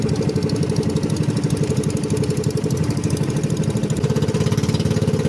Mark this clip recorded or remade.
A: recorded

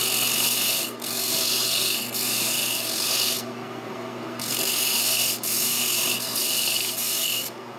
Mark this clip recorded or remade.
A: remade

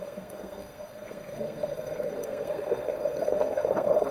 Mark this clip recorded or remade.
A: remade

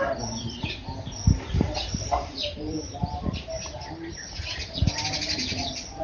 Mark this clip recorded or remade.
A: recorded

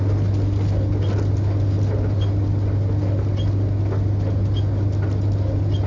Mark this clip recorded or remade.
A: recorded